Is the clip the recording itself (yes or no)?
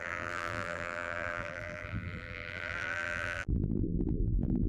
no